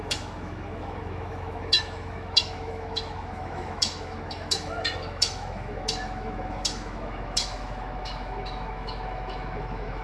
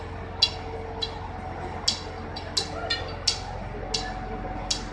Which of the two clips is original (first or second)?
second